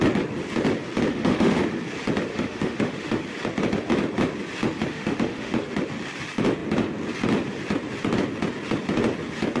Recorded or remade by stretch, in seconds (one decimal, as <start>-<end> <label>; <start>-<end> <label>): 0.0-1.1 recorded; 1.1-1.6 remade; 1.6-2.3 recorded; 2.3-3.1 remade; 3.1-4.9 recorded; 4.9-5.5 remade; 5.5-9.6 recorded